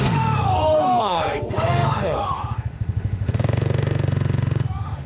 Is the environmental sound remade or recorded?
remade